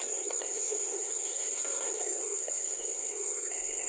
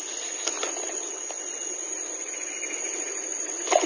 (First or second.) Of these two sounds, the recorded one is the second